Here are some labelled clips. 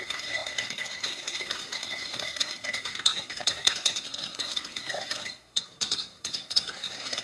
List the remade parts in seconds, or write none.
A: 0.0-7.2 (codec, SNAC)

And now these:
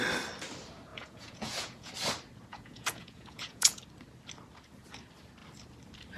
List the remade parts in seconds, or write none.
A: 0.9-1.9 (vocoder, Vocos); 2.5-3.8